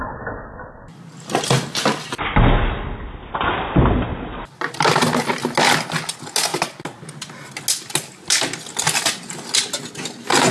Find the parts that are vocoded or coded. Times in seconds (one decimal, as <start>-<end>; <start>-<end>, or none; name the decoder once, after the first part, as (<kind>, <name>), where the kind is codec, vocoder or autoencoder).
none